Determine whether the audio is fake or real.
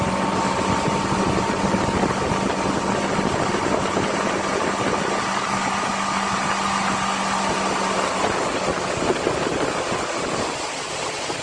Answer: real